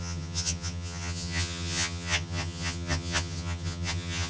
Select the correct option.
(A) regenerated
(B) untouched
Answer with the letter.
A